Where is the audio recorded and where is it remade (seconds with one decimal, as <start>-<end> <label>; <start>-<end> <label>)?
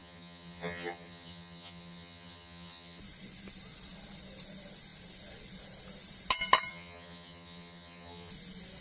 0.0-3.0 remade; 3.0-6.7 recorded; 6.7-8.3 remade; 8.3-8.8 recorded